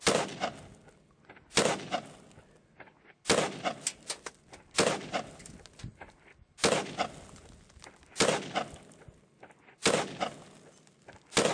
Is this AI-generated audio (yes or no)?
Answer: no